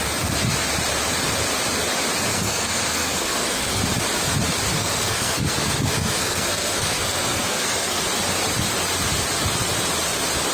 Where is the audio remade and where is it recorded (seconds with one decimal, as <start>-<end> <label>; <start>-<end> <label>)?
0.0-2.3 recorded; 2.3-3.8 remade; 3.8-4.8 recorded; 4.8-8.0 remade; 8.0-10.5 recorded